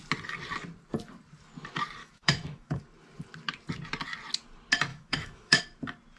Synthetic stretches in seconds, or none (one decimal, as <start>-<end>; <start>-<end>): 2.0-2.8; 4.9-5.6